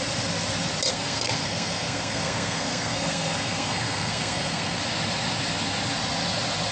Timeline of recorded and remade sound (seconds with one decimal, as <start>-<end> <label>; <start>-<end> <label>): 0.0-0.9 recorded; 0.9-4.8 remade; 4.8-6.7 recorded